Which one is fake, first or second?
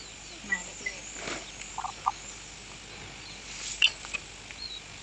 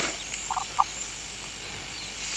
second